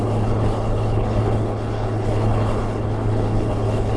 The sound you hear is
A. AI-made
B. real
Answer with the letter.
A